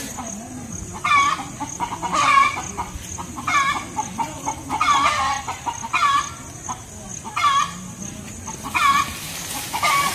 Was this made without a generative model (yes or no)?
yes